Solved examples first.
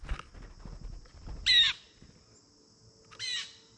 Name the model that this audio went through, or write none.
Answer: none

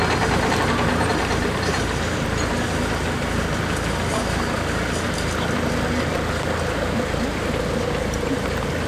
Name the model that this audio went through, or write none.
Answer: none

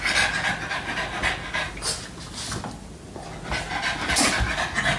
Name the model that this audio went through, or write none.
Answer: none